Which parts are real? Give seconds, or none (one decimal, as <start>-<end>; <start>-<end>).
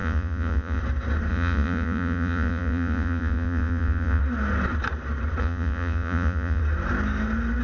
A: 0.8-1.3; 4.2-5.4; 6.6-7.6